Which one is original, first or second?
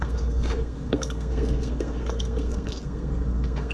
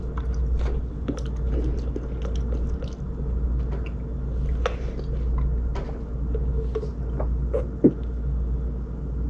second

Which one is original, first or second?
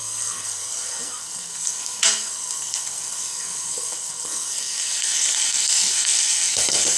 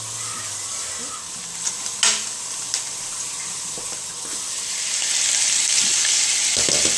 second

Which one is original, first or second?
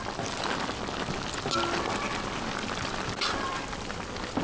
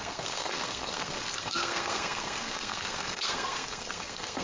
first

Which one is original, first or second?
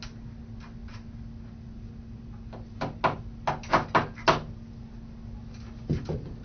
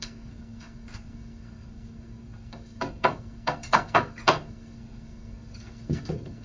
first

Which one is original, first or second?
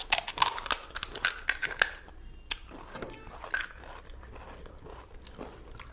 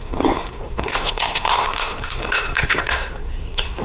first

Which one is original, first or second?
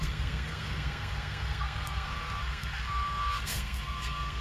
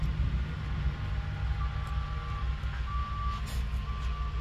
second